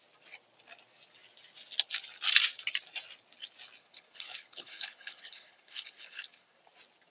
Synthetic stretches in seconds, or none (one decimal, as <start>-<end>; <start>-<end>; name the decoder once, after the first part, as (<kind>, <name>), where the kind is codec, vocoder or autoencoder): 3.8-6.6 (codec, HILCodec)